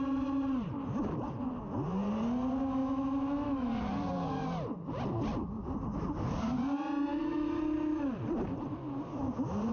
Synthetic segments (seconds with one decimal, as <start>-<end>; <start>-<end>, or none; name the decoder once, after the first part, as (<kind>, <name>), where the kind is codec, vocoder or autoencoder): 2.8-3.8 (autoencoder, DAC-VAE); 7.1-7.6